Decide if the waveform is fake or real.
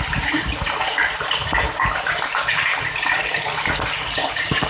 fake